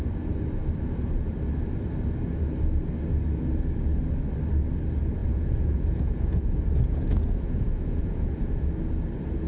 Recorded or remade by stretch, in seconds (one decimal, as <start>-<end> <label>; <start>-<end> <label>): 0.0-5.2 recorded; 5.2-8.4 remade; 8.4-9.5 recorded